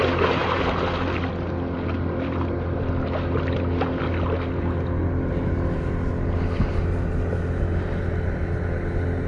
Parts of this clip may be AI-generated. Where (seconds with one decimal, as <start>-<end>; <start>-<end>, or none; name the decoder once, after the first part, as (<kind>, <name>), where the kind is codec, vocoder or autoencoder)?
none